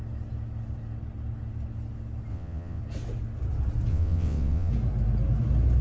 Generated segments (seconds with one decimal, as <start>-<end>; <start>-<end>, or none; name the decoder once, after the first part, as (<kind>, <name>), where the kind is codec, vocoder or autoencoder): 2.3-2.8 (vocoder, WaveNeXt); 3.9-4.7